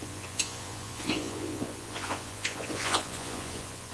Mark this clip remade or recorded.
remade